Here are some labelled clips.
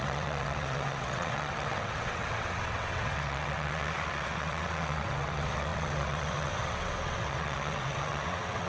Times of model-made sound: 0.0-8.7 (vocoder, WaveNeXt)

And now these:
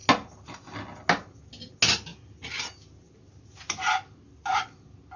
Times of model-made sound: none

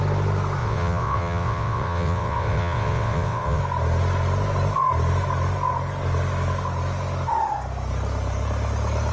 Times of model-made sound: 0.6-3.6 (vocoder, WaveNeXt)

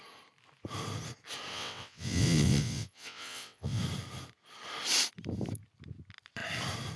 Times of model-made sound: 1.5-3.8 (vocoder, WaveNeXt)

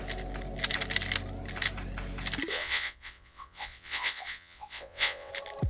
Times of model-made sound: 2.5-5.3 (vocoder, WaveNeXt)

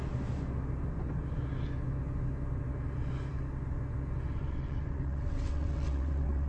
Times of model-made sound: 4.4-6.5 (vocoder, WaveNeXt)

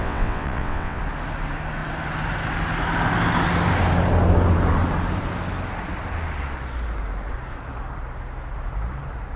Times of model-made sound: 0.0-1.0 (vocoder, WaveNeXt)

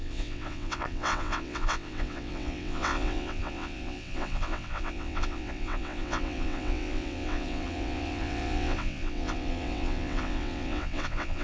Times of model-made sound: 0.0-11.4 (vocoder, WaveNeXt)